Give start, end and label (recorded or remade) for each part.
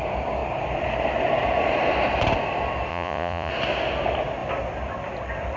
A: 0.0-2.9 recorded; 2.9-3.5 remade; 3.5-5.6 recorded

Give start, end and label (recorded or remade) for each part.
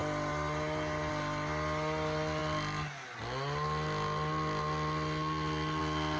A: 0.0-6.2 recorded